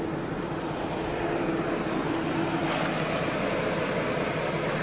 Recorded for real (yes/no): yes